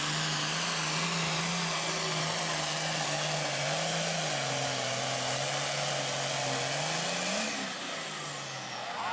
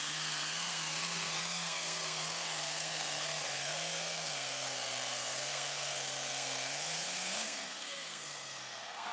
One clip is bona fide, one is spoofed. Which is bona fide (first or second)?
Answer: first